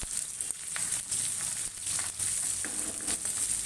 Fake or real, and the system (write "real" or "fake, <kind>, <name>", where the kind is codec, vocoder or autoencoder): real